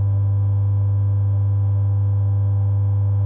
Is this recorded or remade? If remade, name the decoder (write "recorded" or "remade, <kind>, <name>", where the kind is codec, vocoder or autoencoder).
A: remade, autoencoder, DAC-VAE